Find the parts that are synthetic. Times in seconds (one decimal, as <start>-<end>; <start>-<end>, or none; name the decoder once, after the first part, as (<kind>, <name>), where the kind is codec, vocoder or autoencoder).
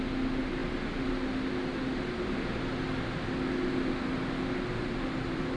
none